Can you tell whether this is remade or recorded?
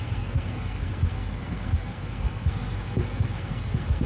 remade